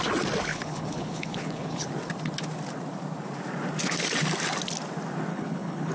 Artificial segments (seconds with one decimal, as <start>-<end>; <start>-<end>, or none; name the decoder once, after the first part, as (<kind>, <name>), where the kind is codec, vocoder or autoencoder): 0.5-1.9 (codec, HILCodec); 5.3-5.9